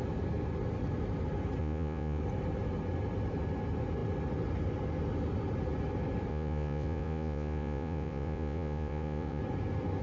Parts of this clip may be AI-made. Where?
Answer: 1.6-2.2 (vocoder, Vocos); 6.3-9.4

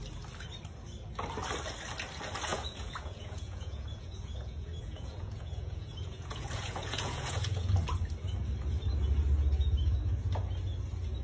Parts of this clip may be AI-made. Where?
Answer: 2.5-7.7 (vocoder, Vocos)

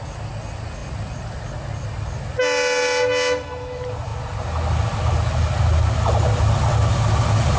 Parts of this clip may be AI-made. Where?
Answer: none

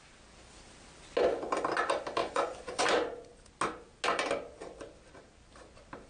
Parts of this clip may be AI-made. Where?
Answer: 2.2-2.8 (vocoder, Vocos)

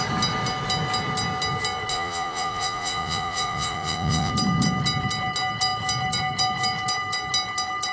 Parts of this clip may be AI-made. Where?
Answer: 1.9-4.3 (vocoder, Vocos)